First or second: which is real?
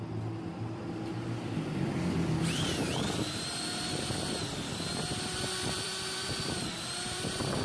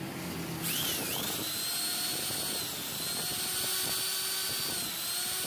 second